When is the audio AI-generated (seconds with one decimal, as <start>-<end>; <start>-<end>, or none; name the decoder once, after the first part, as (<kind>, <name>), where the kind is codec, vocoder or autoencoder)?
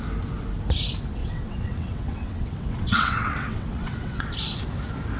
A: 1.2-4.3 (vocoder, WaveNeXt)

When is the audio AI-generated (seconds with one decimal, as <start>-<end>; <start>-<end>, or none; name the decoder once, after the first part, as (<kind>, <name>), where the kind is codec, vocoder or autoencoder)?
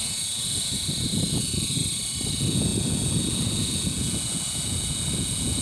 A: 0.0-1.8 (vocoder, Vocos); 2.3-5.6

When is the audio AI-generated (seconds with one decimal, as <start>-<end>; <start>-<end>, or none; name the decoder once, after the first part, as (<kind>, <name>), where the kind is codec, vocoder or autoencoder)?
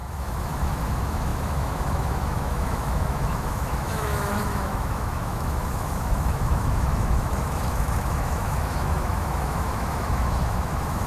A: 0.0-11.1 (autoencoder, DAC-VAE)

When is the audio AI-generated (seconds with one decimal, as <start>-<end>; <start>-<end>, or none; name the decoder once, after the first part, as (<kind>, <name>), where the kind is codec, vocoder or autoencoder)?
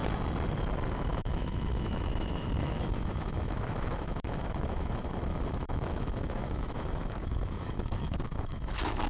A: 0.9-9.1 (autoencoder, DAC-VAE)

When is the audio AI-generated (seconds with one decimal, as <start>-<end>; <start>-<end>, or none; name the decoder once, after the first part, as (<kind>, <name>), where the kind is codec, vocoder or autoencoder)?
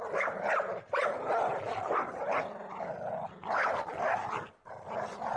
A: none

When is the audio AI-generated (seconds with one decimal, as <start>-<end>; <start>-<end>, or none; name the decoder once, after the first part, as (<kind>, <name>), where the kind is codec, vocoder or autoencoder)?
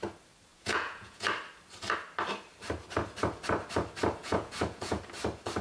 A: 0.5-1.2 (vocoder, Vocos); 4.2-5.0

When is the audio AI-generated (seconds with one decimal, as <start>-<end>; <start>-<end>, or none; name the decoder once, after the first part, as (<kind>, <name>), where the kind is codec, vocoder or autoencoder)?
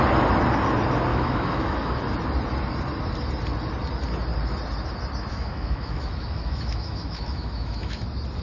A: 1.1-2.0 (autoencoder, DAC-VAE); 5.3-8.0